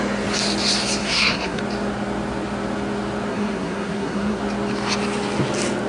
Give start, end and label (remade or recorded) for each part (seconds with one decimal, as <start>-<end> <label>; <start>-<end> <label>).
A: 0.0-1.0 recorded; 1.0-1.6 remade; 1.6-3.3 recorded; 3.3-4.4 remade; 4.4-5.9 recorded